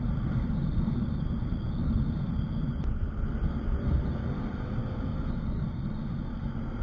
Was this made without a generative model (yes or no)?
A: yes